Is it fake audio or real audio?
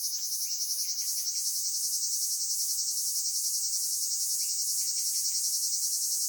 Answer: fake